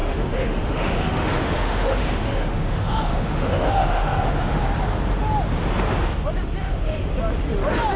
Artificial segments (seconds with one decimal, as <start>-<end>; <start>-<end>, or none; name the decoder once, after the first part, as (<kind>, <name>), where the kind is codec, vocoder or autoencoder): 0.0-4.6 (autoencoder, DAC-VAE); 6.6-7.1